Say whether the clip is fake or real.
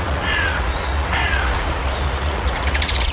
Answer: fake